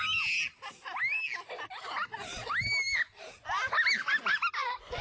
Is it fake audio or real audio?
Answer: real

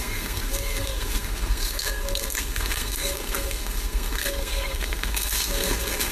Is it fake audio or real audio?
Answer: fake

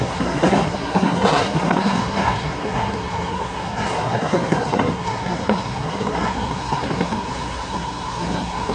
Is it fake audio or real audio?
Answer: fake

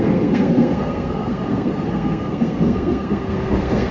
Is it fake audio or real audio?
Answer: fake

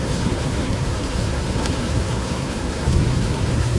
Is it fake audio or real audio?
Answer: fake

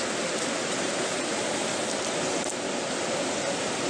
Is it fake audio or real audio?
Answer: real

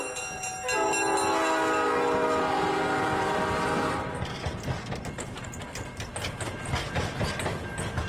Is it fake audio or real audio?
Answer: real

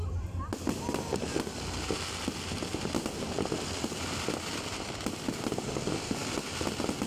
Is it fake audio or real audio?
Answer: real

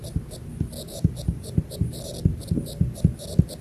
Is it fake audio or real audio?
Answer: real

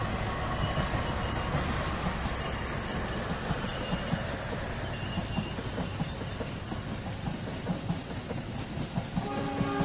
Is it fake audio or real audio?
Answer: real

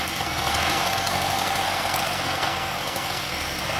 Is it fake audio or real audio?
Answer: fake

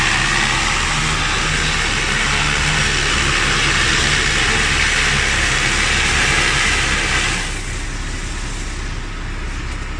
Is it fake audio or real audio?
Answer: real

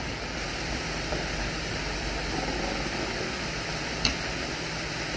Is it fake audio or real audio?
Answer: real